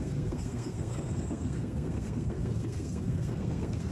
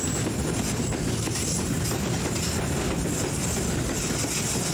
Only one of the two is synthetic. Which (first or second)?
first